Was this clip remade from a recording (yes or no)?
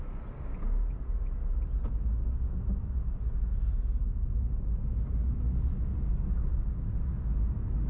no